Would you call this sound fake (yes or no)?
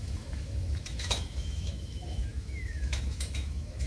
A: yes